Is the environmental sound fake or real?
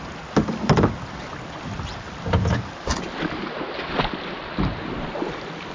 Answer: real